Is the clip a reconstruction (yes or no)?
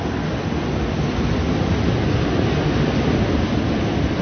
no